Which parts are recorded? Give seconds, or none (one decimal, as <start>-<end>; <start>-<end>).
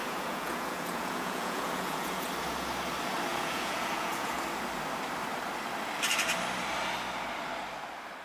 2.3-3.3; 4.4-8.2